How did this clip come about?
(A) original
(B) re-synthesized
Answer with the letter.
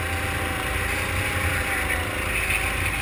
A